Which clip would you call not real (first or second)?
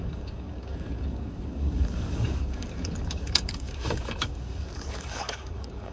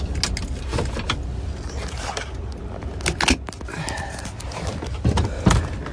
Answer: first